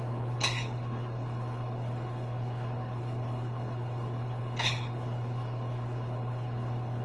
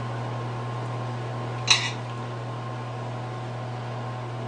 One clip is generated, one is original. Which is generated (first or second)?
first